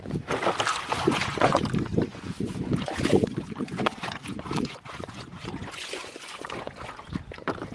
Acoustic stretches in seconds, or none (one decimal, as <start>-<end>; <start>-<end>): 0.0-0.7; 1.6-2.1; 6.7-7.7